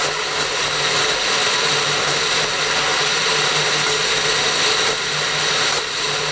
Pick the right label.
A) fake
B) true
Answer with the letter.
B